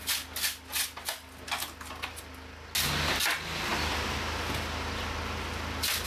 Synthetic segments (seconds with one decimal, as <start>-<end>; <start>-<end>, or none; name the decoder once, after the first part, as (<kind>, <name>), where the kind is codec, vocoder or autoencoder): none